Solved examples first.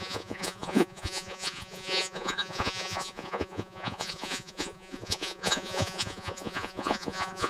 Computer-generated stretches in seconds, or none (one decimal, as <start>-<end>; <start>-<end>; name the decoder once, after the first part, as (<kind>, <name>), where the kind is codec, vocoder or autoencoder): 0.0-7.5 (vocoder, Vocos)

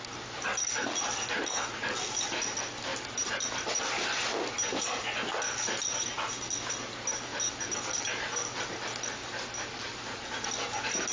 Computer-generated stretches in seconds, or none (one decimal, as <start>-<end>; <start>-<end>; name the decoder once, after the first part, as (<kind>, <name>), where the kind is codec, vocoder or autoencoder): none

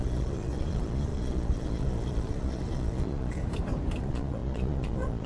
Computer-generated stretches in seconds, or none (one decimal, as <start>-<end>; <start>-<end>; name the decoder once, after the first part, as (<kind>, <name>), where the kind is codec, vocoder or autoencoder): 0.0-3.4 (vocoder, Vocos); 4.0-5.3